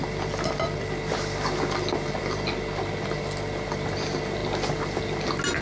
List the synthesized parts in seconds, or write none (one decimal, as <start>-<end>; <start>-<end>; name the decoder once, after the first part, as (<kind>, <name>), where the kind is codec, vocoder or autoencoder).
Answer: none